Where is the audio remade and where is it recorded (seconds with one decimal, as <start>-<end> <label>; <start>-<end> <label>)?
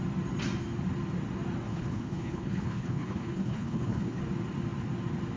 0.0-1.7 recorded; 1.7-4.2 remade; 4.2-5.4 recorded